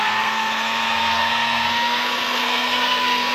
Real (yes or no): no